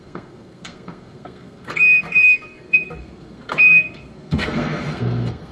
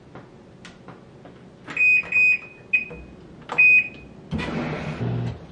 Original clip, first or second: second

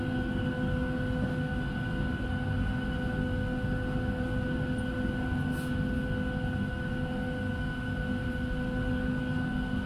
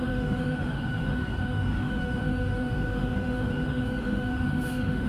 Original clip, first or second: first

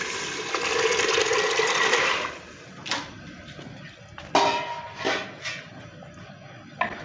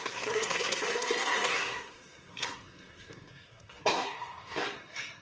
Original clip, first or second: first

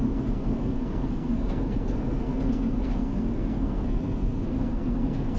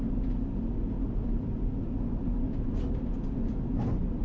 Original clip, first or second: second